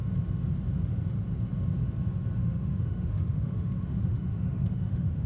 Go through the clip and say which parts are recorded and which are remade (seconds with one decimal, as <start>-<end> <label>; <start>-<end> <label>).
0.0-2.4 recorded; 2.4-5.3 remade